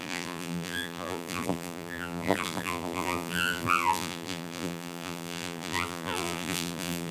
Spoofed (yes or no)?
yes